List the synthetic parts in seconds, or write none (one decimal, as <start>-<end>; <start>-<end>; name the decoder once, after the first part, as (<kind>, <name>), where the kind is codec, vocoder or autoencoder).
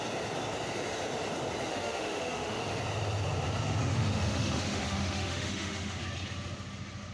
1.7-2.8 (autoencoder, DAC-VAE); 3.8-6.0